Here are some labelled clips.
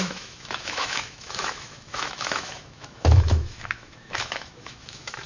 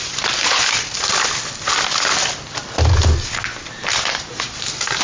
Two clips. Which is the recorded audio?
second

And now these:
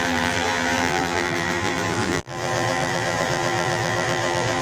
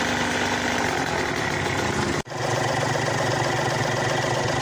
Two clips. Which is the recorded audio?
second